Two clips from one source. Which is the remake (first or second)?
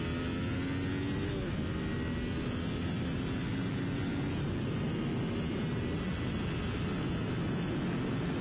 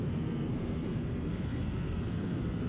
second